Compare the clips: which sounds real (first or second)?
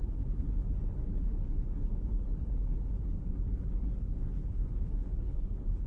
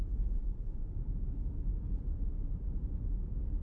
second